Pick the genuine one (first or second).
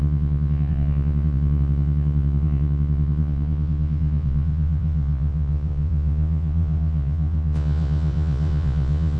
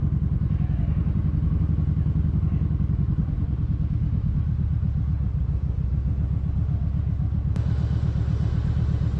second